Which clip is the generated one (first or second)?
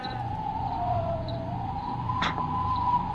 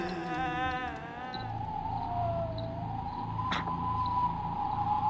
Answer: first